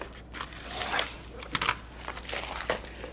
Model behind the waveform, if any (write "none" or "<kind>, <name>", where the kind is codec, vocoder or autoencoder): none